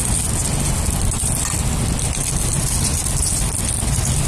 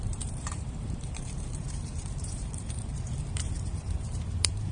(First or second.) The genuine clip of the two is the first